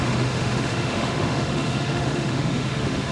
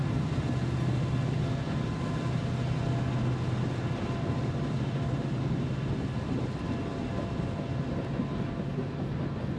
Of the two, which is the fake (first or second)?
first